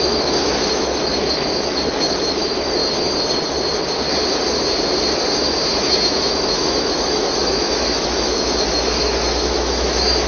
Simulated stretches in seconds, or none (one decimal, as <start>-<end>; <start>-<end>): 0.0-2.8; 5.8-10.3